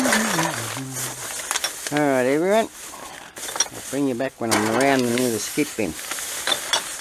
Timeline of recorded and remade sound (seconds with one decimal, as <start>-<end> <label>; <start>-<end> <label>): 0.0-5.1 recorded; 5.1-5.9 remade; 5.9-7.0 recorded